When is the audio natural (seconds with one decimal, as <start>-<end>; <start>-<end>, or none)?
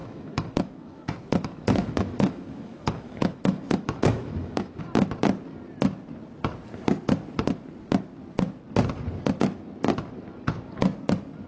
4.8-11.5